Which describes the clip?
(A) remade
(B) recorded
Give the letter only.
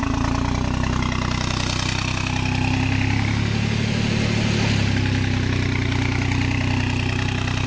B